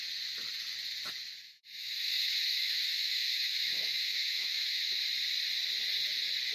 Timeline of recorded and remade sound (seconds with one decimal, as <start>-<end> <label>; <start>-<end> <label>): 0.0-1.4 recorded; 1.4-5.0 remade; 5.0-6.5 recorded